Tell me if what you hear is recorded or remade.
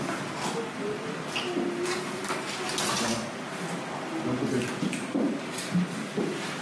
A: recorded